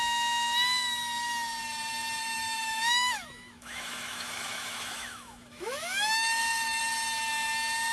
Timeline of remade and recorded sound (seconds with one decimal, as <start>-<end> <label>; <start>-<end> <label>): 0.0-2.2 recorded; 2.2-6.8 remade; 6.8-7.9 recorded